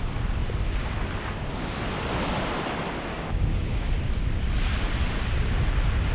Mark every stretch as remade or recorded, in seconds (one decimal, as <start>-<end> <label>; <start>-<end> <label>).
0.0-3.1 recorded; 3.1-3.9 remade; 3.9-6.1 recorded